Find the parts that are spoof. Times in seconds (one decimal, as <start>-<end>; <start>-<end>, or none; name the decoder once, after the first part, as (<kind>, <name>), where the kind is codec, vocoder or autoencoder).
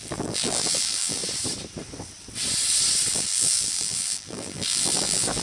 0.0-1.2 (vocoder, BigVGAN v2); 3.1-5.4